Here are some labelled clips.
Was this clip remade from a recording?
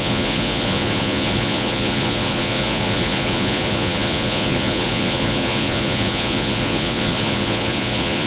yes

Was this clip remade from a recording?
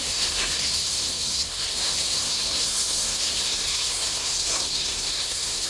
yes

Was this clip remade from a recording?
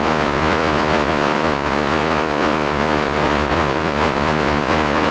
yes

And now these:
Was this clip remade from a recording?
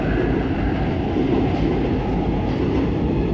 no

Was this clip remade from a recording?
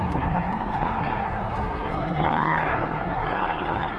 yes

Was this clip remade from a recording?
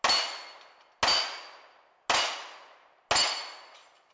no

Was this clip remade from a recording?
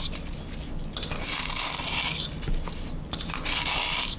no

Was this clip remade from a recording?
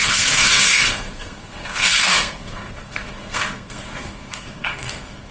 yes